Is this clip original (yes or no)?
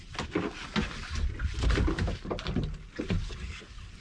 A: yes